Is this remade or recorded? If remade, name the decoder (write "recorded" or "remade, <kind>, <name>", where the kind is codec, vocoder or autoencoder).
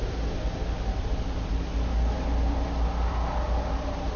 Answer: recorded